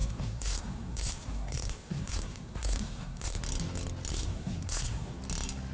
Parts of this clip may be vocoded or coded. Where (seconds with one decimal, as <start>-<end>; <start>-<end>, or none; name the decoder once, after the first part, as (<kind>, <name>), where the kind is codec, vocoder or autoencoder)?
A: 0.0-3.4 (codec, SNAC); 4.1-5.2